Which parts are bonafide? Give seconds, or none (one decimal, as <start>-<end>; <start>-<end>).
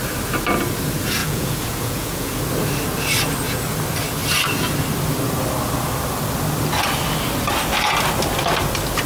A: 0.0-1.2; 2.4-9.1